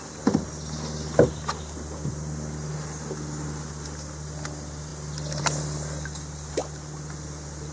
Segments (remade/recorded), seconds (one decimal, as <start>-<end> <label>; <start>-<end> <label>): 0.0-4.9 recorded; 4.9-5.4 remade; 5.4-7.7 recorded